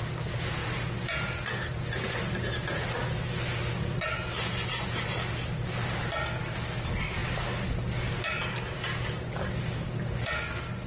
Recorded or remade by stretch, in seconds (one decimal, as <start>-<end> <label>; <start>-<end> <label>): 0.0-10.9 recorded